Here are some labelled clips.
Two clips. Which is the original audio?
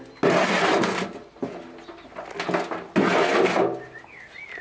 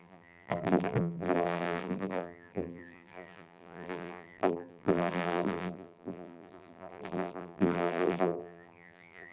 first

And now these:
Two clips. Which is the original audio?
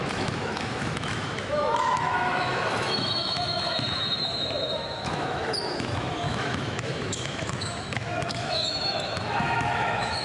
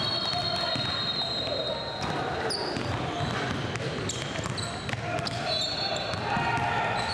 second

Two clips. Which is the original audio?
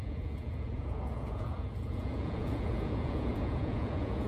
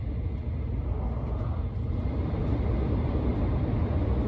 second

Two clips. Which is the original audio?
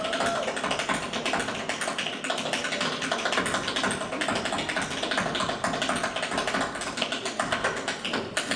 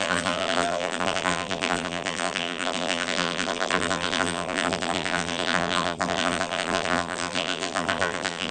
first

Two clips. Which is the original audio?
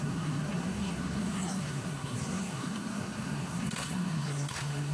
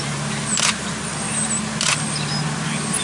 second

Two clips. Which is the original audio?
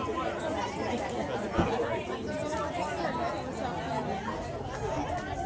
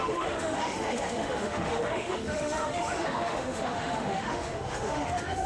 first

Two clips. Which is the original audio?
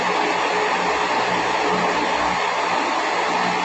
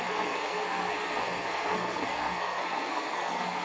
first